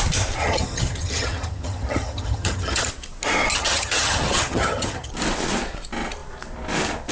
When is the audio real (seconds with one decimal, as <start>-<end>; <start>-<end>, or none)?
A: 0.0-0.4; 2.9-3.5; 5.1-7.1